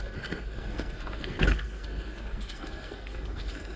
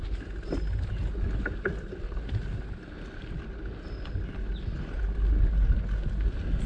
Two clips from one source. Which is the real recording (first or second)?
second